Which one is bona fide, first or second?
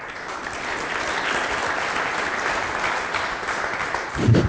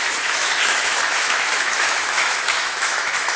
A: first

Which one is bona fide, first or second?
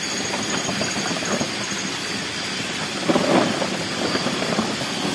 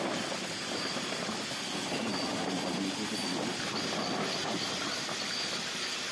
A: second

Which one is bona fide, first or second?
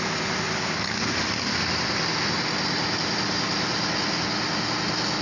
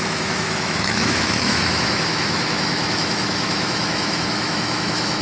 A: first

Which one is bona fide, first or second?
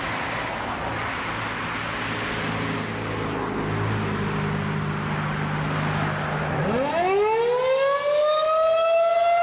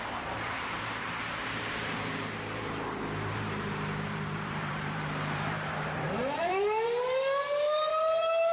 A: first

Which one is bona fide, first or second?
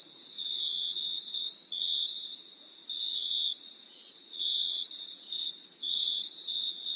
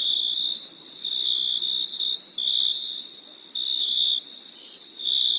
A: second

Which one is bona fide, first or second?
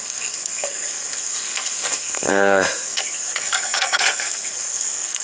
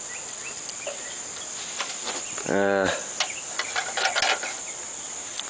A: second